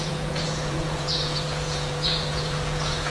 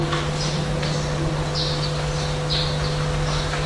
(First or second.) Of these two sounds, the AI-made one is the first